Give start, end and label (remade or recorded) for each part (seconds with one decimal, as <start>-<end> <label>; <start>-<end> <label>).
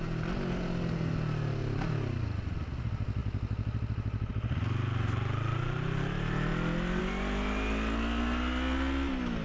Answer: 0.0-9.4 recorded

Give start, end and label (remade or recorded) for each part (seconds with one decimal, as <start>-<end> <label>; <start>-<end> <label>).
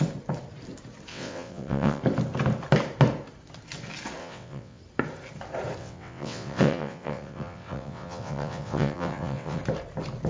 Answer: 0.0-1.1 recorded; 1.1-2.0 remade; 2.0-4.2 recorded; 4.2-4.8 remade; 4.8-5.8 recorded; 5.8-9.6 remade; 9.6-10.3 recorded